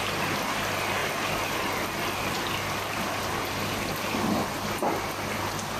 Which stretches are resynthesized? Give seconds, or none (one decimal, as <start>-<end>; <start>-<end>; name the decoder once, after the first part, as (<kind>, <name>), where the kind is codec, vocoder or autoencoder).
1.0-3.1 (vocoder, BigVGAN v2)